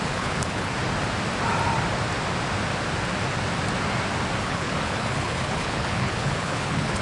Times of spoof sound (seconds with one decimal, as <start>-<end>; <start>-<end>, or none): 0.0-0.7; 4.4-7.0